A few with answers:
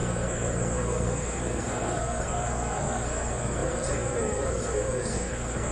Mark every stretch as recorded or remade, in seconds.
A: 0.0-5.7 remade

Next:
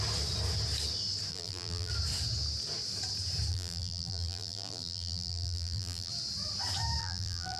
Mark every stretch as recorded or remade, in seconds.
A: 0.0-1.3 recorded; 1.3-1.9 remade; 1.9-3.5 recorded; 3.5-6.1 remade; 6.1-7.0 recorded; 7.0-7.6 remade

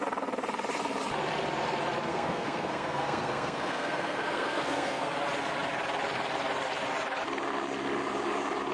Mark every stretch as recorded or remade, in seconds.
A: 0.0-2.1 recorded; 2.1-5.1 remade; 5.1-8.7 recorded

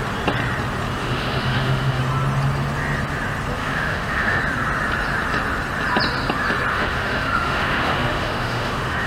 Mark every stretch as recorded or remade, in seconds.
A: 0.0-1.0 recorded; 1.0-2.0 remade; 2.0-3.6 recorded; 3.6-4.4 remade; 4.4-6.7 recorded; 6.7-9.1 remade

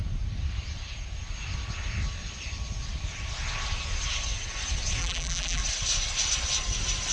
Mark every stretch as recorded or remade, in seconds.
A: 0.0-5.0 recorded; 5.0-5.6 remade; 5.6-7.1 recorded

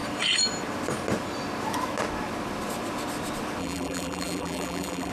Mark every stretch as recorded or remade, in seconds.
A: 0.0-3.6 recorded; 3.6-5.1 remade

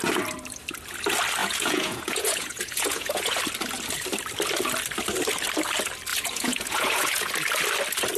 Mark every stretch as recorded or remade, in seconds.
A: 0.0-1.4 recorded; 1.4-3.4 remade; 3.4-6.1 recorded; 6.1-7.3 remade; 7.3-8.2 recorded

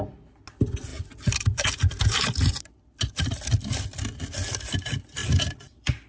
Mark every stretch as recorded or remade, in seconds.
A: 0.0-0.9 recorded; 0.9-3.5 remade; 3.5-5.2 recorded; 5.2-6.1 remade